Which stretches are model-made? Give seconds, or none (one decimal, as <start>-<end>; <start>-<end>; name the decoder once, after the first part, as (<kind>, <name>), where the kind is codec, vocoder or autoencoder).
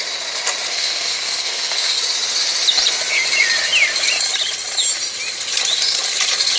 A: 0.7-2.0 (codec, SNAC)